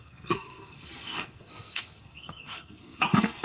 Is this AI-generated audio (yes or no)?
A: yes